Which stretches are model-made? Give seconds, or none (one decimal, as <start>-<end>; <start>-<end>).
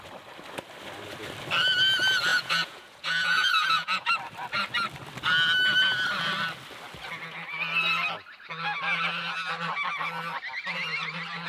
2.3-4.1